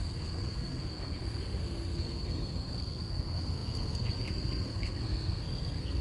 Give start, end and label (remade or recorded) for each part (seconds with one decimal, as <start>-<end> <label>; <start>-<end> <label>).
0.0-6.0 remade